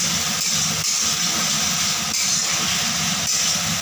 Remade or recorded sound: recorded